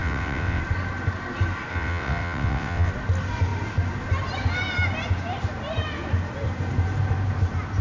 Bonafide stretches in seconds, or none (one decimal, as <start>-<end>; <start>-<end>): 0.6-1.7; 2.9-7.8